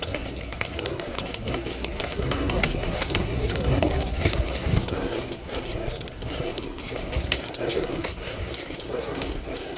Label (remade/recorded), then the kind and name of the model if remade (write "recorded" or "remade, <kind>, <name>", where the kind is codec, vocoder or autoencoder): remade, codec, SNAC